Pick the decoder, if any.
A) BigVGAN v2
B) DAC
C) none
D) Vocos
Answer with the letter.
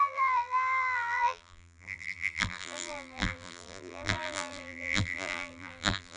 A